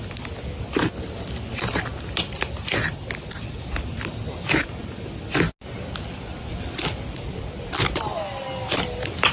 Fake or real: real